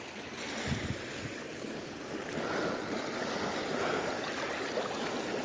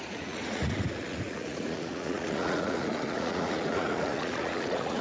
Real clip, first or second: first